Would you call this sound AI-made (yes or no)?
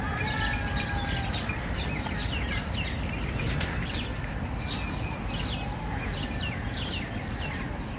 no